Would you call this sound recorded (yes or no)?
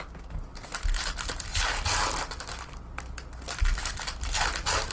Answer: yes